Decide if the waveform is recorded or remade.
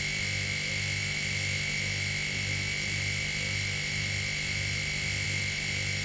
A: recorded